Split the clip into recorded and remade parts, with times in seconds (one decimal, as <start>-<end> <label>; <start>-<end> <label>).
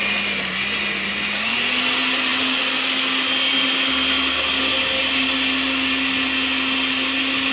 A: 0.0-7.5 recorded